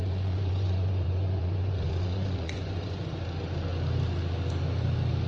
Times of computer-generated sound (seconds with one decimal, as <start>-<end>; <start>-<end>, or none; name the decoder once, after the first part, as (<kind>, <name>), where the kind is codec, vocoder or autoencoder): 0.0-3.2 (vocoder, Vocos)